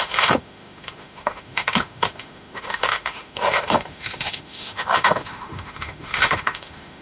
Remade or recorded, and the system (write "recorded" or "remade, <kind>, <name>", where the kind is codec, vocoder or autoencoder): remade, autoencoder, DAC-VAE